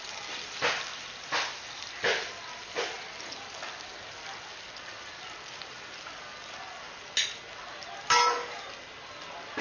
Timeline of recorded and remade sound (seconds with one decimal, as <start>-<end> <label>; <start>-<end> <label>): 0.0-9.6 recorded